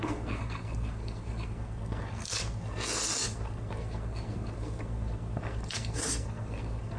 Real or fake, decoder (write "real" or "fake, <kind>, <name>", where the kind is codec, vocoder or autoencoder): fake, codec, SNAC